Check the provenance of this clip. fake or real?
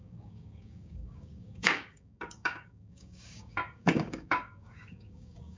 fake